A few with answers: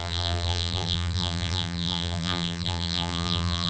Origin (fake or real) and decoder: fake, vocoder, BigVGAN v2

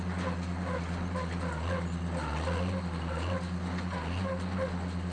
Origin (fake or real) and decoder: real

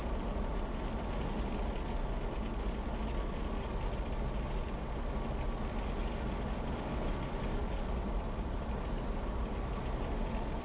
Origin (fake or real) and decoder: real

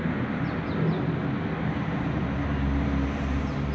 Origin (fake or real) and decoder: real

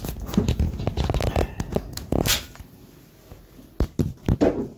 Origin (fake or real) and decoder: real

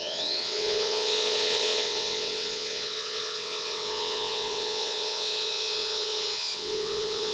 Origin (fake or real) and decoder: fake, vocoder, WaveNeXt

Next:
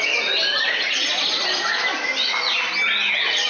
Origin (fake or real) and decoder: real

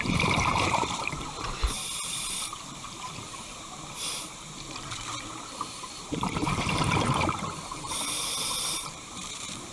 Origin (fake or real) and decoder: fake, vocoder, BigVGAN v2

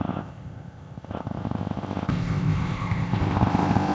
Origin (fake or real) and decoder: fake, codec, ZipCodec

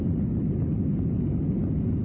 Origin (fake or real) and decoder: real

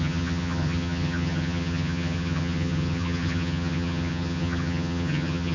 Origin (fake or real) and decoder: fake, vocoder, HiFi-GAN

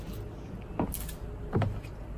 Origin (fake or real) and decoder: real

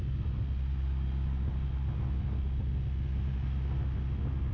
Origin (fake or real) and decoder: real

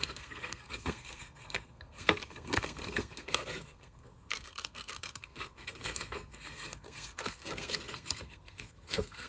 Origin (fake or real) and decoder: fake, codec, SNAC